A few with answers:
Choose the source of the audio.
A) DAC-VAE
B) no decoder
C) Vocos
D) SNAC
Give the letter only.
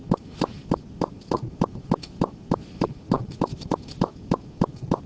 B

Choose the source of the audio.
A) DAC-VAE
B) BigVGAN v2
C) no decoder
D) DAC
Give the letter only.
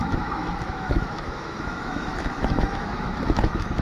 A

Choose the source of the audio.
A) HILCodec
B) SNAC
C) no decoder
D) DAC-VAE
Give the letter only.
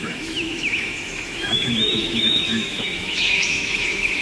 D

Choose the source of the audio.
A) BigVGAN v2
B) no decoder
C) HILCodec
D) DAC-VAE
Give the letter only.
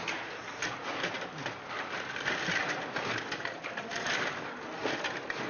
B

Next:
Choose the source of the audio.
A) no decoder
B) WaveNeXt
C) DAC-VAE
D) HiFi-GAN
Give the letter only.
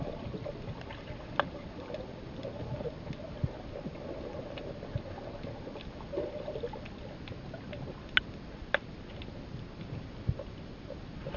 A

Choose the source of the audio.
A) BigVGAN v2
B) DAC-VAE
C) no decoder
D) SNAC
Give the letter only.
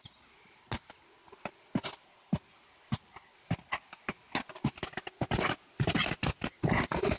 C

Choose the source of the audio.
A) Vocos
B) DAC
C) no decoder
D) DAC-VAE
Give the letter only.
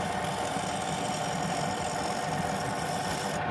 C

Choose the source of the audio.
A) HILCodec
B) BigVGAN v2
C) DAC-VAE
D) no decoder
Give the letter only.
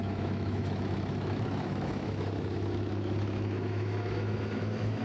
C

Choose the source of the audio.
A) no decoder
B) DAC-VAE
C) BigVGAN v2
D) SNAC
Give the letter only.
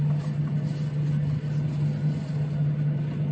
A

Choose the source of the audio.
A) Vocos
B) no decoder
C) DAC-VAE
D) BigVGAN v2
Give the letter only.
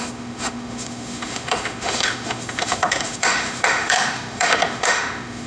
C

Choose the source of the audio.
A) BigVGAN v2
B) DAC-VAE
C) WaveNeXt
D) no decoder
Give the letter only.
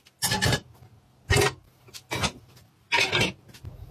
D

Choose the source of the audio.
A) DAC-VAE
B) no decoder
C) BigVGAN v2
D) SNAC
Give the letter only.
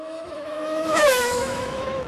A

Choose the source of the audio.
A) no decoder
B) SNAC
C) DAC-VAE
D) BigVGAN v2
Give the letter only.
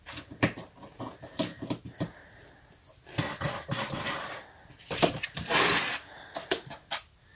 A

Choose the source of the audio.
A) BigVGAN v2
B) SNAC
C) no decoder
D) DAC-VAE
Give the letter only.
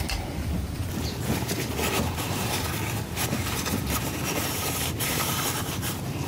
C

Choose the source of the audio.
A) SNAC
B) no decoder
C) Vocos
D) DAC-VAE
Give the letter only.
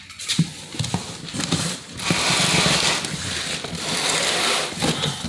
B